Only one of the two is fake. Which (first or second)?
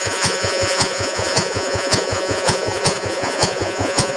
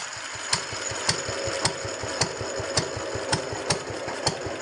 first